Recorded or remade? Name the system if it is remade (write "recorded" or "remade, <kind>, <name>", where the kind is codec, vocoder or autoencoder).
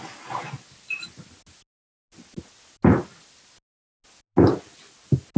recorded